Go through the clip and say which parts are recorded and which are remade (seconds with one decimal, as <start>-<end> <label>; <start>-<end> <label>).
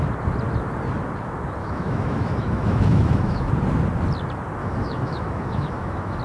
0.0-1.6 recorded; 1.6-3.5 remade; 3.5-4.6 recorded; 4.6-6.2 remade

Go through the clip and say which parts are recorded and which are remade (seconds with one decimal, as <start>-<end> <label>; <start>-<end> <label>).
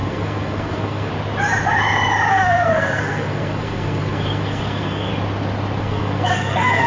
0.0-1.1 remade; 1.1-2.3 recorded; 2.3-5.1 remade; 5.1-5.8 recorded; 5.8-6.9 remade